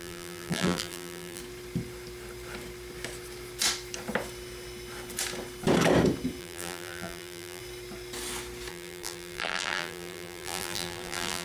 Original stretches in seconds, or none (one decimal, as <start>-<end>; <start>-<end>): 1.4-6.4; 7.6-8.7